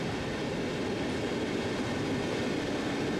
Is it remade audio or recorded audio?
recorded